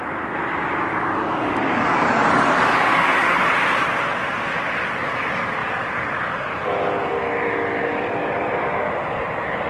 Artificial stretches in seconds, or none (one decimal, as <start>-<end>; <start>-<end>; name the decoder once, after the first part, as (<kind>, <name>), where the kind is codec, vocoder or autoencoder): 0.9-3.5 (codec, DAC)